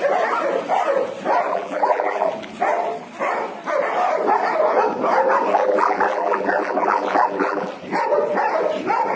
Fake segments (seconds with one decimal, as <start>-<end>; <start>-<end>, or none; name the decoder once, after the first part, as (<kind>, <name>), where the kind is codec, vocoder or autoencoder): 1.5-2.3 (vocoder, BigVGAN v2); 5.5-7.7